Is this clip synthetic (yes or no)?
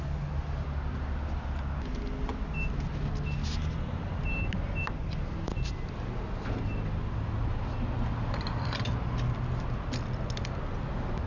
no